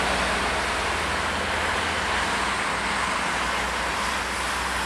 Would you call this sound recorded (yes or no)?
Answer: yes